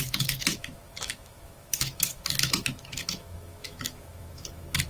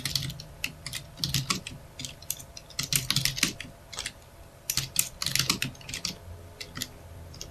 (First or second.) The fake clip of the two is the first